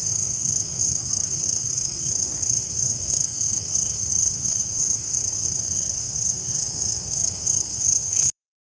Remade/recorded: remade